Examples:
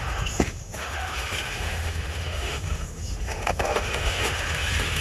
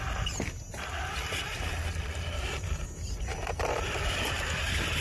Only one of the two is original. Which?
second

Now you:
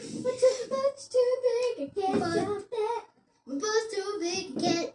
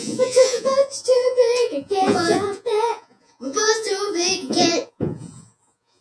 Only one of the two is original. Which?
first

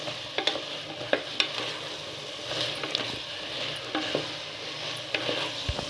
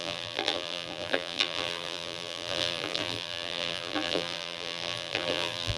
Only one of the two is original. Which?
first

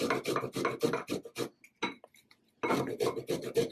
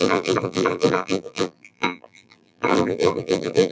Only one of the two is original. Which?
first